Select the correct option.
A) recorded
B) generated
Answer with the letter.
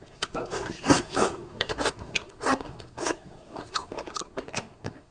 B